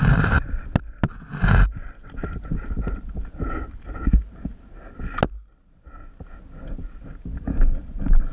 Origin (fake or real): real